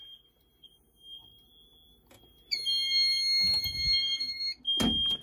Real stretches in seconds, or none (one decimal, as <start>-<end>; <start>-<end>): 0.0-5.2